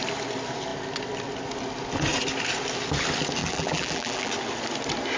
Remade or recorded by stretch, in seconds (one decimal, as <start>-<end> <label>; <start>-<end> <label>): 0.0-3.4 recorded; 3.4-4.3 remade; 4.3-5.2 recorded